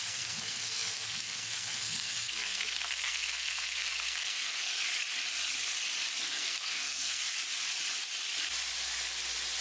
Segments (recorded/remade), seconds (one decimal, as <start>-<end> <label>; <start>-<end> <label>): 0.0-4.7 remade; 4.7-6.2 recorded; 6.2-7.2 remade; 7.2-9.6 recorded